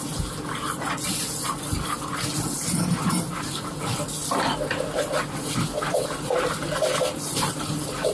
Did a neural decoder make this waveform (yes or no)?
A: no